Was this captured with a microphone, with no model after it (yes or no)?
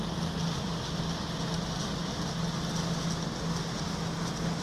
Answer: yes